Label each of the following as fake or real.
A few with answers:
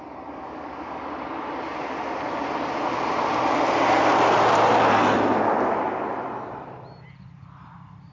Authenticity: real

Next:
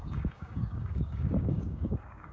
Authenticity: fake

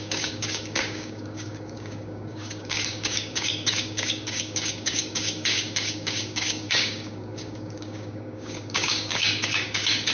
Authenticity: fake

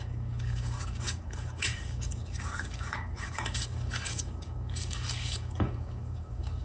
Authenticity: fake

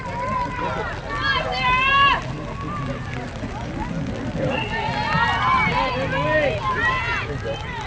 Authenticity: real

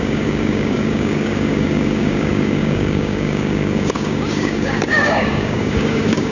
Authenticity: fake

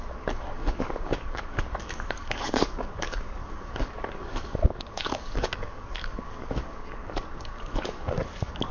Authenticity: fake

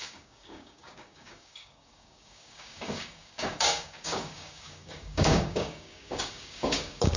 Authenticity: fake